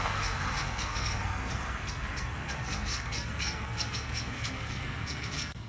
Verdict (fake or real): fake